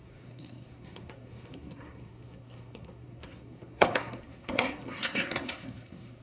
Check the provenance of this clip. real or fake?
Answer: fake